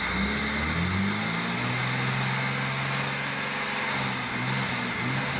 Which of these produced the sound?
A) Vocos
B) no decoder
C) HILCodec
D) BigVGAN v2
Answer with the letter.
B